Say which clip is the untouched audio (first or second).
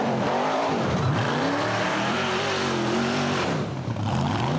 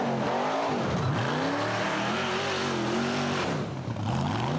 second